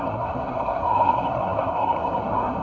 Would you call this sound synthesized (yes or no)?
yes